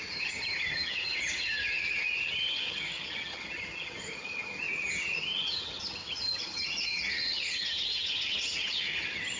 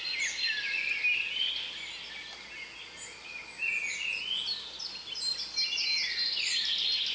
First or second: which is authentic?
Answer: second